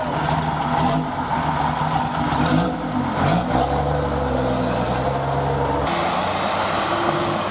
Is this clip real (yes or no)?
yes